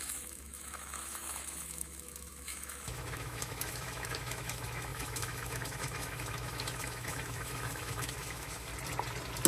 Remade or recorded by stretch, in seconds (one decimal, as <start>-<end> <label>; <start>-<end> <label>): 0.0-8.7 remade; 8.7-9.5 recorded